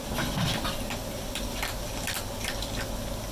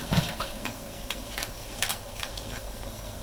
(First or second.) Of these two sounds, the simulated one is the second